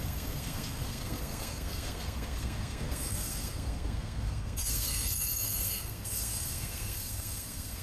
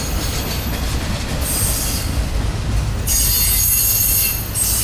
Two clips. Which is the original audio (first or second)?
second